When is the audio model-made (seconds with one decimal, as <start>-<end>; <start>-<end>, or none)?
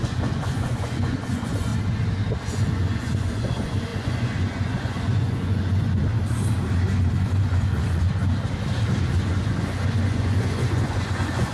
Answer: 0.0-1.7; 2.4-6.0; 7.2-8.2; 9.2-11.5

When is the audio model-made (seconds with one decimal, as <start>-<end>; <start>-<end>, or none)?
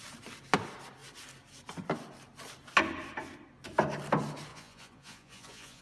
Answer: 4.5-5.8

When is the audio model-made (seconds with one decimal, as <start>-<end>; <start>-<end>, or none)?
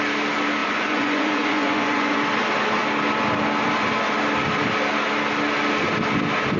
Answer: 0.6-2.2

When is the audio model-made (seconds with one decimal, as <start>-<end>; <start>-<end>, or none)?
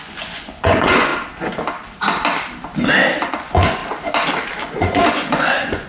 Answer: 0.0-1.1; 3.3-3.8; 4.6-5.9